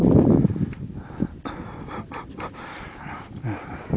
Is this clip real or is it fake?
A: fake